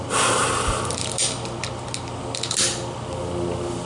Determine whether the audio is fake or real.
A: real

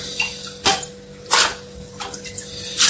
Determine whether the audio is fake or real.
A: real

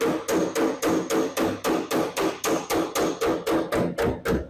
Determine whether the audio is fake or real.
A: real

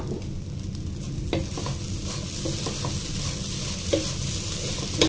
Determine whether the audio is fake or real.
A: real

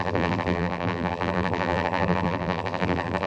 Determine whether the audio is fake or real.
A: fake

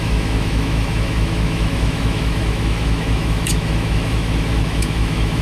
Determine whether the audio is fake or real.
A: fake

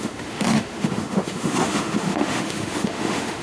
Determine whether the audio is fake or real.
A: fake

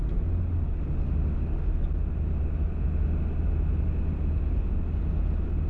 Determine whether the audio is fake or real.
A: real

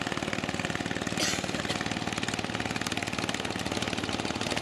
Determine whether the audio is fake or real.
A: real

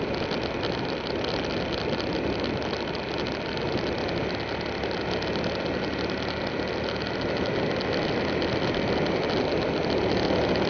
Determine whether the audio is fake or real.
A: real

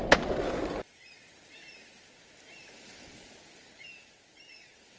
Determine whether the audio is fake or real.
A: real